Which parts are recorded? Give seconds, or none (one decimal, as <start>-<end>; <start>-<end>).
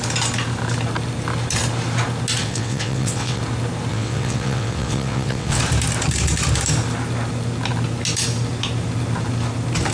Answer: 0.0-2.4; 3.4-3.9; 5.6-9.9